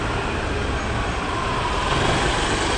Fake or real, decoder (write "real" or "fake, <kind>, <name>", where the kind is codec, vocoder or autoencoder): real